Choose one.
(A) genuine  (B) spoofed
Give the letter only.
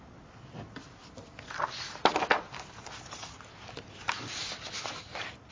A